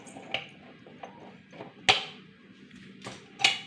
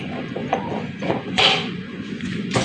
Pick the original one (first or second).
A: first